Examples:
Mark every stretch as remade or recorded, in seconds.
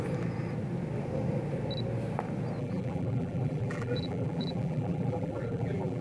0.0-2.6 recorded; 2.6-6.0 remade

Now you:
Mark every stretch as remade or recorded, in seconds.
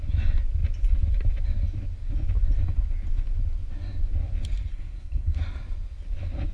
0.0-4.7 recorded; 4.7-5.4 remade; 5.4-6.5 recorded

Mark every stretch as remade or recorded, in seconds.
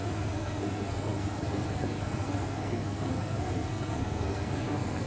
0.0-5.1 remade